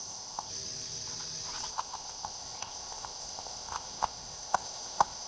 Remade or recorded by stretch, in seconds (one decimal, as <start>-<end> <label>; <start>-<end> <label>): 0.0-0.5 remade; 0.5-1.7 recorded; 1.7-5.3 remade